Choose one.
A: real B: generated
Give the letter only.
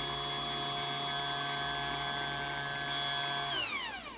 A